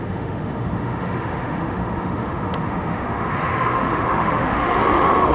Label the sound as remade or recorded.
remade